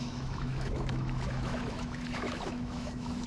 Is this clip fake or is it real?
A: fake